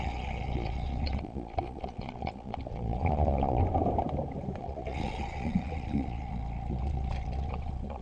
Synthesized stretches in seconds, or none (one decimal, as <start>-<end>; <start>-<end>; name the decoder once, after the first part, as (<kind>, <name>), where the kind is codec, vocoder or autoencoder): 0.0-3.6 (vocoder, Vocos); 4.6-8.0